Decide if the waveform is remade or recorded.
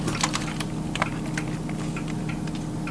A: recorded